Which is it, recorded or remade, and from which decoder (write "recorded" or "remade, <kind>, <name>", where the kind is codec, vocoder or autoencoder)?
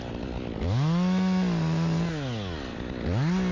recorded